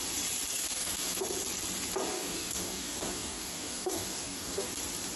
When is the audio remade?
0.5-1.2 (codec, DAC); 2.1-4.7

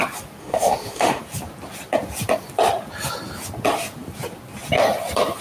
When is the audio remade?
0.4-1.2 (autoencoder, DAC-VAE)

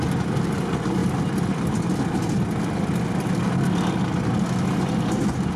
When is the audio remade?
none

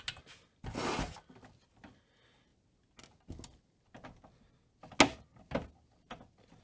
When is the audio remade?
none